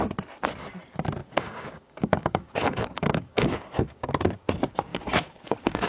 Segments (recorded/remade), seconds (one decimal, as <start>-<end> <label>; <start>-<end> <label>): 0.0-1.2 recorded; 1.2-4.1 remade; 4.1-4.9 recorded; 4.9-5.9 remade